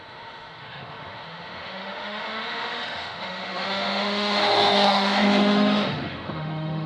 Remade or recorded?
remade